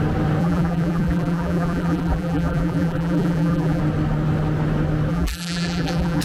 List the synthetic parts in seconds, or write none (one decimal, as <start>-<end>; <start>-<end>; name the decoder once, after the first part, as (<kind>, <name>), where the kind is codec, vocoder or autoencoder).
0.4-3.8 (vocoder, BigVGAN v2); 5.1-6.2